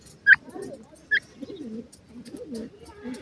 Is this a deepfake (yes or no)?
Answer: no